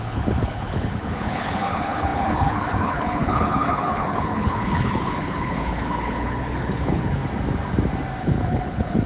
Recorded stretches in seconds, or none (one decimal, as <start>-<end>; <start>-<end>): 7.2-8.2